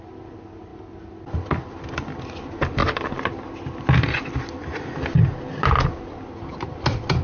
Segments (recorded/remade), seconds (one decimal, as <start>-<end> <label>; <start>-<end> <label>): 0.0-7.2 recorded